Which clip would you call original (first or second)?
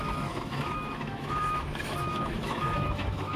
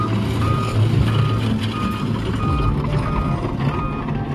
second